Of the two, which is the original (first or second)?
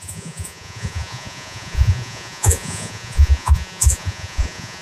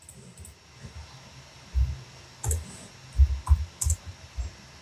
second